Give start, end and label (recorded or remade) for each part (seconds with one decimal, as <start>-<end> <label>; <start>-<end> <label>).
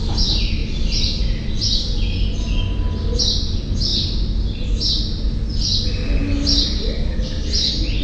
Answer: 0.0-8.0 recorded